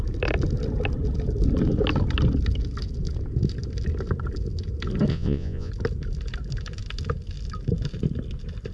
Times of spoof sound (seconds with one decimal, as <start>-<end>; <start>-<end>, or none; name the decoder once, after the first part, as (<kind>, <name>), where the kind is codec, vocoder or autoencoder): 5.1-5.7 (vocoder, Vocos)